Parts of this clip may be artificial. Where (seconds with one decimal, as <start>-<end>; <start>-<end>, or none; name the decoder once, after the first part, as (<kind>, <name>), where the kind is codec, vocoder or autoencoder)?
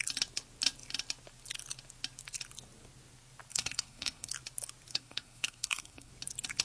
3.5-4.3 (codec, SNAC); 4.9-6.1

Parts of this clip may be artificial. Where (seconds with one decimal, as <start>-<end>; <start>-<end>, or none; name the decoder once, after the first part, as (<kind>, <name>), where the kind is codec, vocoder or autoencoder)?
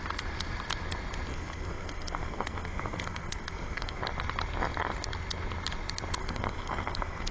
1.3-4.0 (codec, SNAC); 6.2-7.3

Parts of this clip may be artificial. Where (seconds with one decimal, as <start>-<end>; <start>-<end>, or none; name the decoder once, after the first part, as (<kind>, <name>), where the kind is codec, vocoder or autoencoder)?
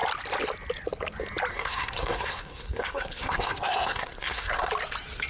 1.5-4.7 (codec, SNAC)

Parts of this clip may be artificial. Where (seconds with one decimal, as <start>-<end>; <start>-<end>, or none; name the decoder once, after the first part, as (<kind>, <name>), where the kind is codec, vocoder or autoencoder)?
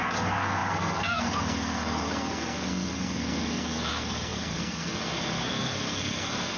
0.0-6.6 (codec, SNAC)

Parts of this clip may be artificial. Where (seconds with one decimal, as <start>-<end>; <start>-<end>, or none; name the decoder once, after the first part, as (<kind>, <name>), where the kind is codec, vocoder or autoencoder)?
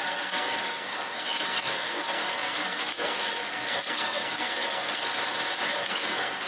0.0-5.1 (codec, SNAC); 5.7-6.5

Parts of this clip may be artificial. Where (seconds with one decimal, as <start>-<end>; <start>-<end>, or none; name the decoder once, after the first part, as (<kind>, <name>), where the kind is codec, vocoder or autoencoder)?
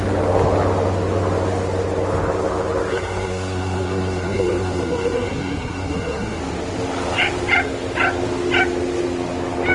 2.9-6.4 (codec, SNAC)